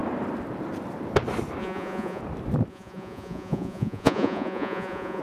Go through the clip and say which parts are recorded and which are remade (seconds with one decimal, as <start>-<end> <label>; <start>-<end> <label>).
0.0-1.6 recorded; 1.6-2.2 remade; 2.2-2.7 recorded; 2.7-5.2 remade